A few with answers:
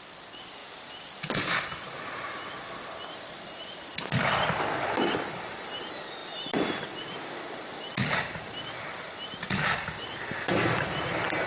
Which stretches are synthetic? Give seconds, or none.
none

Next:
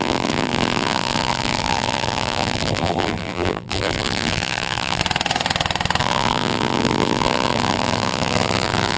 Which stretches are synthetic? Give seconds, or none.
0.0-5.0 (vocoder, BigVGAN v2); 6.0-9.0

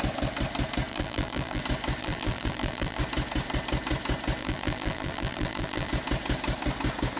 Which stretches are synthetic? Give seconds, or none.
0.9-1.6 (vocoder, BigVGAN v2); 2.0-3.0; 4.4-5.9

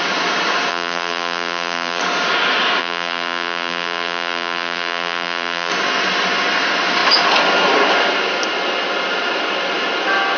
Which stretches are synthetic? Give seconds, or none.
0.7-2.0 (vocoder, BigVGAN v2); 2.8-5.7

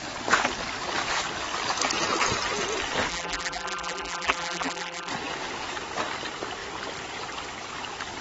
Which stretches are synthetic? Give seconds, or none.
3.1-5.1 (vocoder, BigVGAN v2)

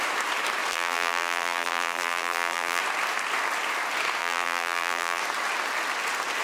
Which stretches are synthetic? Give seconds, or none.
0.7-2.8 (vocoder, BigVGAN v2); 4.2-5.2

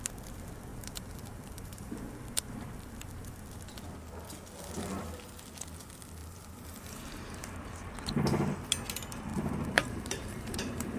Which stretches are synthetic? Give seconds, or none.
0.7-2.1 (vocoder, BigVGAN v2); 6.2-7.9; 9.3-11.0